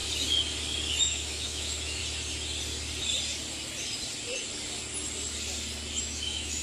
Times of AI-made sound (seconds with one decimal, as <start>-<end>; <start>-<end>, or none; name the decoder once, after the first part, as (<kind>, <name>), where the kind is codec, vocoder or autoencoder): 1.0-2.0 (autoencoder, DAC-VAE); 6.0-6.6